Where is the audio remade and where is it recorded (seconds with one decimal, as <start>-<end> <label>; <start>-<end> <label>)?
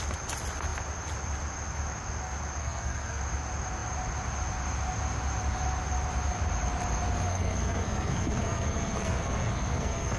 0.0-2.6 recorded; 2.6-3.2 remade; 3.2-7.3 recorded; 7.3-10.2 remade